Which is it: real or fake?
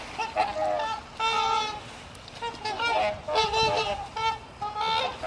real